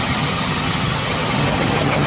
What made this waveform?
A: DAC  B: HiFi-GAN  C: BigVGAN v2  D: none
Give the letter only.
B